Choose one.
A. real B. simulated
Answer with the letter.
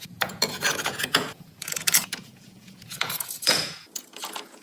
B